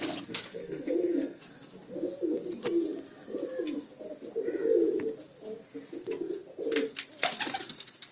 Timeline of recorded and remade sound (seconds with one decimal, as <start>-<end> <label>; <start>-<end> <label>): 0.0-0.5 recorded; 0.5-1.4 remade; 1.4-8.1 recorded